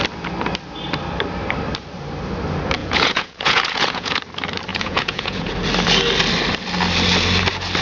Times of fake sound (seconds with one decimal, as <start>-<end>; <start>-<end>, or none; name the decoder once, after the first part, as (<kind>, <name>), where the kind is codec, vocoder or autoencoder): 2.8-4.2 (vocoder, Vocos); 4.7-5.5